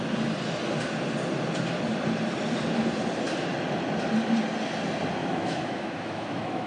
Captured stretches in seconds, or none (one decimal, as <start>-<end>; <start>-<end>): 0.0-5.2